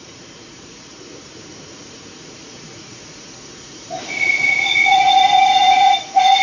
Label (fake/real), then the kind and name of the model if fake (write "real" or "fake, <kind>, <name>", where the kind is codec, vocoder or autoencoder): fake, vocoder, Vocos